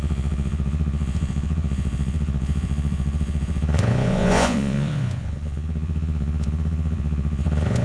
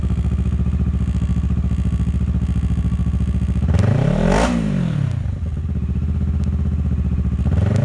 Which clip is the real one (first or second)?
second